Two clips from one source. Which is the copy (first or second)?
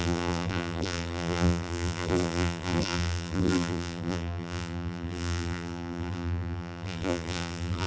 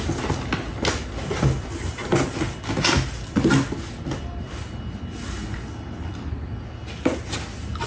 first